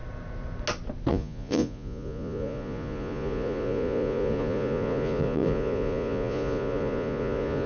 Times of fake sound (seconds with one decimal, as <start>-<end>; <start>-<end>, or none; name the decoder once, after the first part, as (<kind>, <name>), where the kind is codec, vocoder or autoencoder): 1.1-7.7 (vocoder, Vocos)